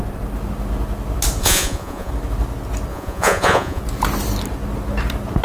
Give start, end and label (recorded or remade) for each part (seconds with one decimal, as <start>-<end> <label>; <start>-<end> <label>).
0.0-1.4 recorded; 1.4-2.1 remade; 2.1-2.9 recorded; 2.9-3.8 remade; 3.8-5.4 recorded